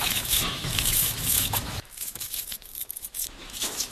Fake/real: fake